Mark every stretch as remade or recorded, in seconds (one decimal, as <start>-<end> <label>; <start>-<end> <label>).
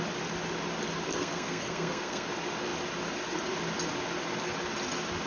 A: 0.0-1.1 recorded; 1.1-2.3 remade; 2.3-5.3 recorded